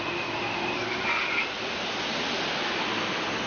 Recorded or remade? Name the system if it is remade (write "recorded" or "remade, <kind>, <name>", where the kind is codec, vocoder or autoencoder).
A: recorded